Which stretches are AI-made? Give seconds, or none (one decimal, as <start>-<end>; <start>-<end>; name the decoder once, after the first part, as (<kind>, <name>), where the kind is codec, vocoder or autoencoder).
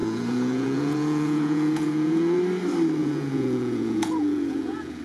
0.0-2.4 (vocoder, Vocos); 3.0-5.0